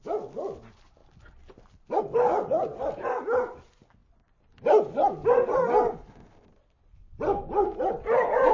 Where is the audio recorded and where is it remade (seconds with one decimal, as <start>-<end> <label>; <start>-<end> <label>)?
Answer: 0.0-8.5 recorded